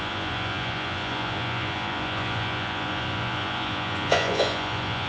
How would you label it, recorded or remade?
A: remade